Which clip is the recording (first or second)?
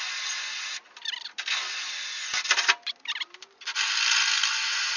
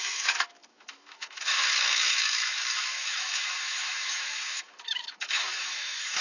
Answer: first